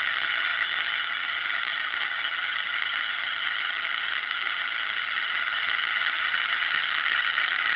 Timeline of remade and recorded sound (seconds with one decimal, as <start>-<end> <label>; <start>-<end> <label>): 0.0-7.8 remade